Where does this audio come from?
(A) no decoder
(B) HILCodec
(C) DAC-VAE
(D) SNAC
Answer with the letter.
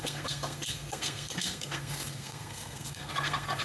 D